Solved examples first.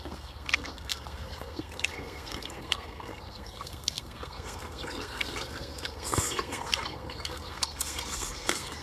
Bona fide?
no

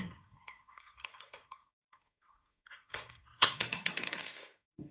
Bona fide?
no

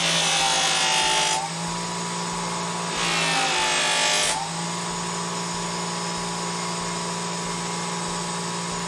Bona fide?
yes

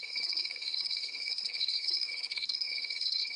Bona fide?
no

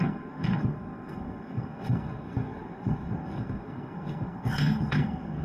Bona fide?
no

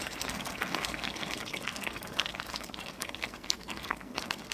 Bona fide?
no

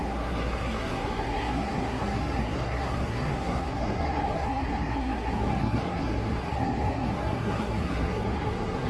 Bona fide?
no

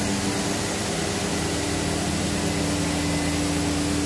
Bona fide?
yes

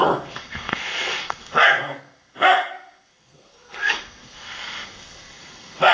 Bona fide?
no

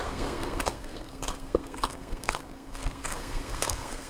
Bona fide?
no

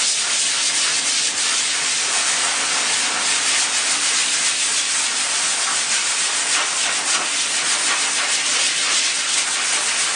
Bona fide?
yes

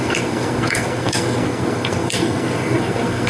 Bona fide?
no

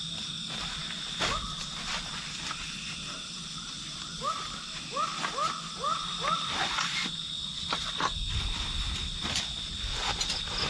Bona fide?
yes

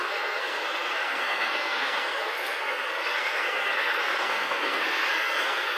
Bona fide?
no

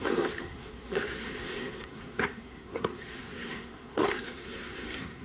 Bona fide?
no